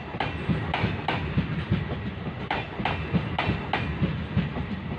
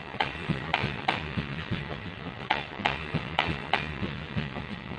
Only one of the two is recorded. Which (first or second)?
first